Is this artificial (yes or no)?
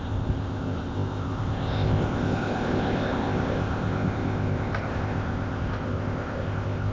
yes